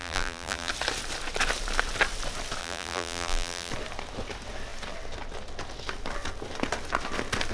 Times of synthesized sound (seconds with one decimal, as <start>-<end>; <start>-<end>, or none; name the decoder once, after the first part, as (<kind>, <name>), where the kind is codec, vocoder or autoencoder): 0.0-0.7 (vocoder, BigVGAN v2); 2.6-3.7